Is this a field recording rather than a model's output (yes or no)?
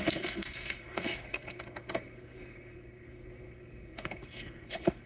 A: no